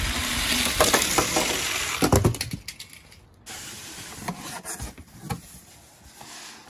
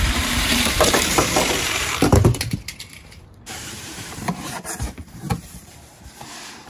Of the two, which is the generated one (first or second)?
second